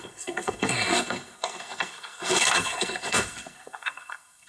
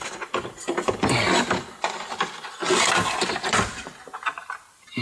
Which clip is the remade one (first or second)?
first